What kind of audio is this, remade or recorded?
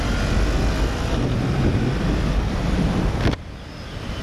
recorded